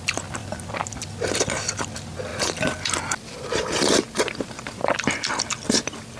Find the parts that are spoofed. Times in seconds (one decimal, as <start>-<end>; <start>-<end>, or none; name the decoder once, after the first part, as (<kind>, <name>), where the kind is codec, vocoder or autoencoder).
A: 0.4-1.0 (vocoder, BigVGAN v2); 2.3-4.8

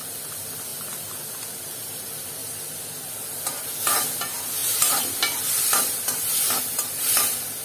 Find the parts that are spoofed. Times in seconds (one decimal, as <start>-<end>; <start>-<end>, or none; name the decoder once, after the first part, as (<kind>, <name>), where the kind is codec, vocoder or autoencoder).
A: 2.4-3.1 (vocoder, BigVGAN v2); 4.6-6.6